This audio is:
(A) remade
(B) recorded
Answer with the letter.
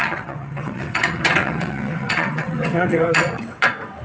A